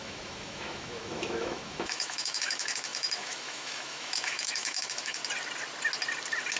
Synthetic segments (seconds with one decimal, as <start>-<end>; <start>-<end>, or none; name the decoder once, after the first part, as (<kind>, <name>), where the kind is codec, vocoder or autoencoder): 0.0-5.2 (autoencoder, DAC-VAE)